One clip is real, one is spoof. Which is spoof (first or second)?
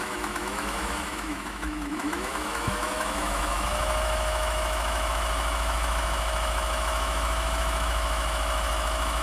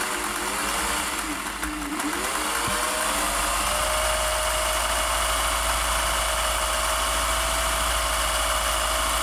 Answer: first